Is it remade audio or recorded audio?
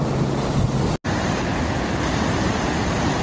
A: recorded